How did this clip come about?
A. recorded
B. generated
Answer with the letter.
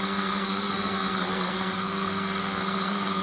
B